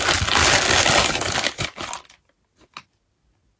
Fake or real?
real